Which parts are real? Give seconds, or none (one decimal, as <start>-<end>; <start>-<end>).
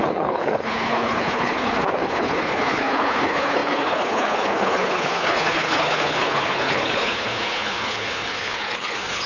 none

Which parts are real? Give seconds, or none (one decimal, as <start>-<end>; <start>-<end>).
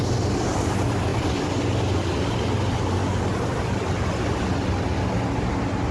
0.0-5.9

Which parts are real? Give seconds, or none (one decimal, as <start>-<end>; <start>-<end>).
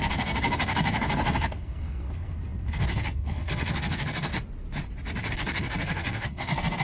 4.3-5.3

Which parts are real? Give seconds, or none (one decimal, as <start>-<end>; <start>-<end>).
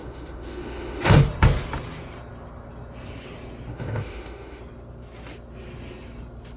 1.2-3.7; 4.6-6.6